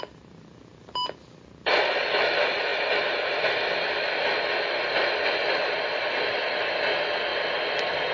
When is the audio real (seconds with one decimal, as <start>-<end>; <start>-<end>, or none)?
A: 0.0-8.1

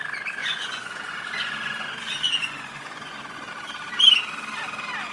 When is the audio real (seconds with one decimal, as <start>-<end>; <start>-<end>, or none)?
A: 0.0-0.4; 3.5-5.1

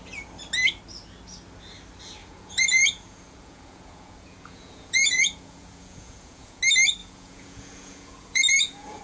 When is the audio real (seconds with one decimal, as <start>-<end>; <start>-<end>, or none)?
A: 0.0-2.2; 6.6-7.0

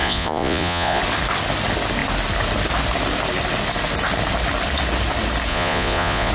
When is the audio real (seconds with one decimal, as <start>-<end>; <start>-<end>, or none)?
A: 1.0-5.5